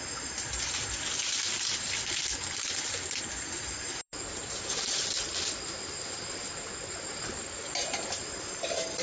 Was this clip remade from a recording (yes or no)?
no